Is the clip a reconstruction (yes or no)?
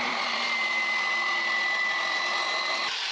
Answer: no